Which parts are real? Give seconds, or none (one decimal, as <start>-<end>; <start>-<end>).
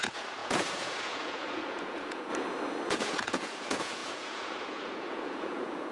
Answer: 2.3-2.9